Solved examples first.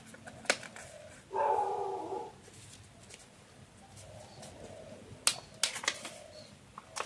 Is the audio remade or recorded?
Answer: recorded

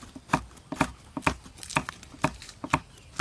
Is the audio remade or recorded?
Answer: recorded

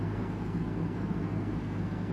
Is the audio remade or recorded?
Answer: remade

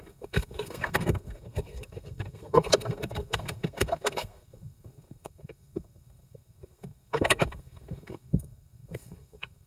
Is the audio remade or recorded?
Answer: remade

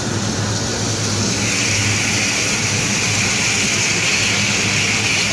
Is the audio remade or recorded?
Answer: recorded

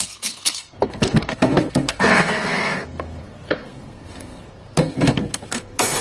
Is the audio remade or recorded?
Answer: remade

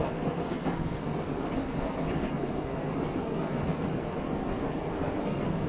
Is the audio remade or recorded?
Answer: remade